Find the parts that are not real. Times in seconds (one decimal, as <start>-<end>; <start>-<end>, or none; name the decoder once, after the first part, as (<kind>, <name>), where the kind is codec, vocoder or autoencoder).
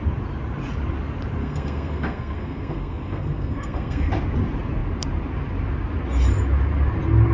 1.4-4.1 (codec, SNAC)